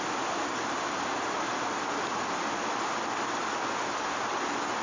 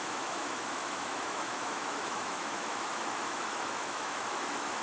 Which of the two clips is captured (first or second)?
first